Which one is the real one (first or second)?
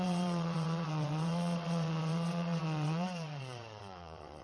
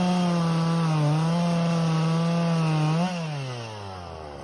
second